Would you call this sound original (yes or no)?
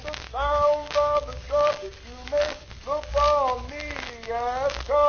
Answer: no